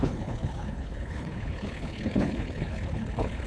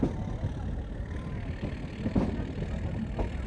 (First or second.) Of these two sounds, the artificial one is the first